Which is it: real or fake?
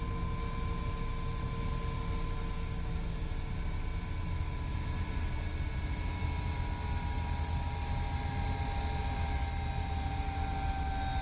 real